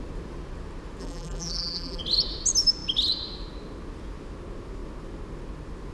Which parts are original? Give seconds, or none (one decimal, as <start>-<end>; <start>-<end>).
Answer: 0.0-1.0; 2.0-5.9